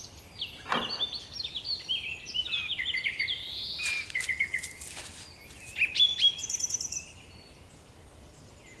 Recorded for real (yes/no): yes